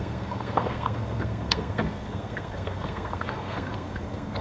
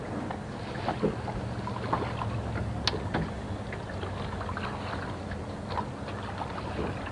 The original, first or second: second